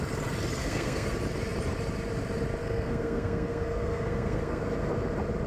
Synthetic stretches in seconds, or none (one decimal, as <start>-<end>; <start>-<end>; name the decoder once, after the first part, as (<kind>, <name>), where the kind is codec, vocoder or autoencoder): 0.6-1.1 (codec, SNAC); 2.6-4.6